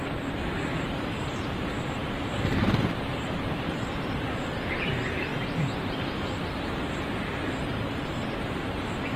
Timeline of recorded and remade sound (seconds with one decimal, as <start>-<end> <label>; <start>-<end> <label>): 0.0-5.3 remade; 5.3-7.3 recorded; 7.3-9.2 remade